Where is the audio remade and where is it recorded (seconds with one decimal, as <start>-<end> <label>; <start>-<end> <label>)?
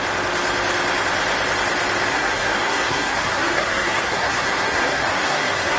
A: 0.0-2.1 recorded; 2.1-5.8 remade